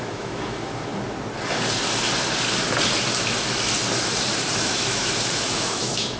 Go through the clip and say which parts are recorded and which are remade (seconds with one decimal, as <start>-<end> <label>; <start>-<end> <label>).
0.0-0.9 remade; 0.9-4.6 recorded; 4.6-6.2 remade